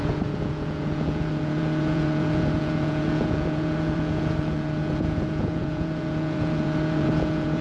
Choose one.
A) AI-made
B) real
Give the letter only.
A